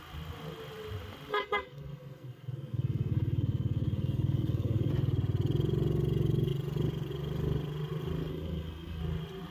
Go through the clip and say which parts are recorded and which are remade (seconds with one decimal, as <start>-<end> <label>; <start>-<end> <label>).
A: 0.0-1.3 recorded; 1.3-4.9 remade; 4.9-8.3 recorded; 8.3-9.0 remade; 9.0-9.5 recorded